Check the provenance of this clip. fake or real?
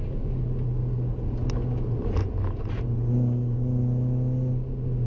real